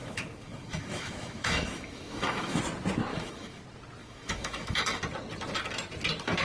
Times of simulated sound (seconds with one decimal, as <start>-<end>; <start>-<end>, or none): 0.0-2.6; 3.1-3.6; 4.0-5.0

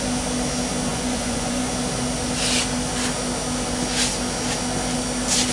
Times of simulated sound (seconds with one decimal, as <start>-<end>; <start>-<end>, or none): 0.9-1.7

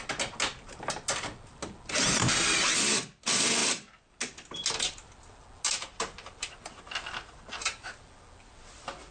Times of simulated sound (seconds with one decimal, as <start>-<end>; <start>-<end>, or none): none

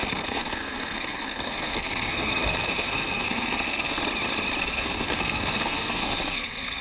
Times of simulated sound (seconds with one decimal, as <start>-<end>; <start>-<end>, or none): 0.0-4.0; 4.6-6.8

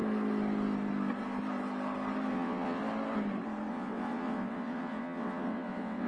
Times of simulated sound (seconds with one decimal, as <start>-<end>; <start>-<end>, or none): 2.3-2.8; 3.7-6.1

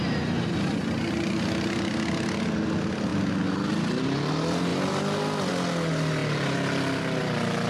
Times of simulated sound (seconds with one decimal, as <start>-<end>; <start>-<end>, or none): none